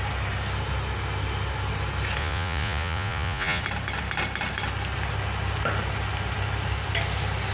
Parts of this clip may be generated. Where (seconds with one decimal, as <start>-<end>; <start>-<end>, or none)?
2.2-3.6